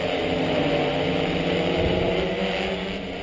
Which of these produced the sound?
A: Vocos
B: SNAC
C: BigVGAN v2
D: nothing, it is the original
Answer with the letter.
D